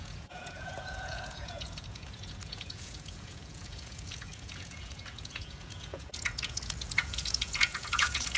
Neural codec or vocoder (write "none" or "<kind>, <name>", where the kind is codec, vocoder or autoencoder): vocoder, Vocos